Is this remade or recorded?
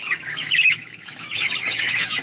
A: remade